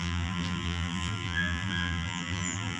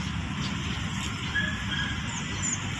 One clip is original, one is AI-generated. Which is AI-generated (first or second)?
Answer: first